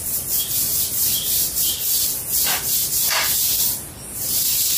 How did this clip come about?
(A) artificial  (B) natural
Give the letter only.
B